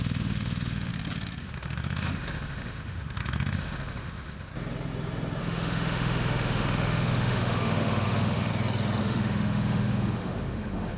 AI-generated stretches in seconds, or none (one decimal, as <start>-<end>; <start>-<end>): 0.0-0.9; 1.4-4.5; 5.4-8.5; 9.0-11.0